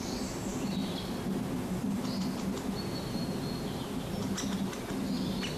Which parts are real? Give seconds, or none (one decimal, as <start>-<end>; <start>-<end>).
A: 0.0-5.6